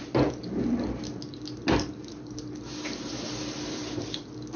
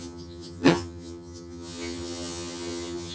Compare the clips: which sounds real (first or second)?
first